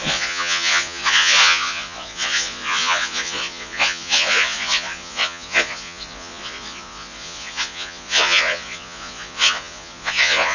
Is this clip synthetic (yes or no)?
yes